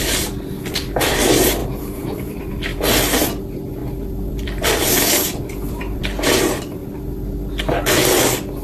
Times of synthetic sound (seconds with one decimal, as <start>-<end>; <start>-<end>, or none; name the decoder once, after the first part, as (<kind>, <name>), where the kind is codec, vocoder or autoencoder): 1.6-2.4 (vocoder, BigVGAN v2); 3.8-6.0